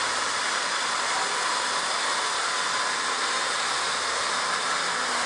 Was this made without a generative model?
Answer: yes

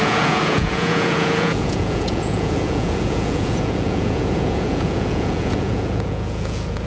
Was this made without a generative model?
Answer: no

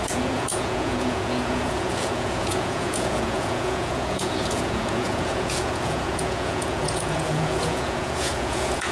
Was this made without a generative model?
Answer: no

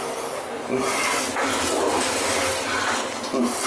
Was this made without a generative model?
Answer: yes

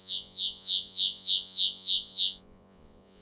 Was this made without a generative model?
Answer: no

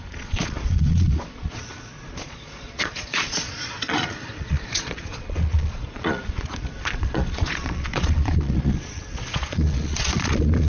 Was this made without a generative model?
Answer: no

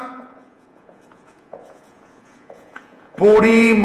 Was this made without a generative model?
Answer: no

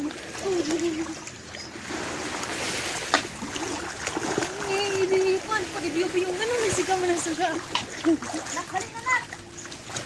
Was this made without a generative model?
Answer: yes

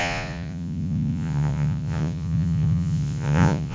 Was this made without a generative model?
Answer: no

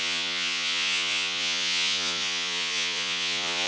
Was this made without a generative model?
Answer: no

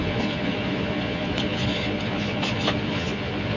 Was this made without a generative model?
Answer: no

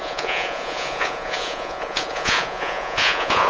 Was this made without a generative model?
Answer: no